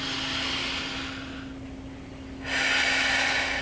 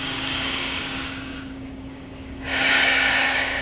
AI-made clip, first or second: second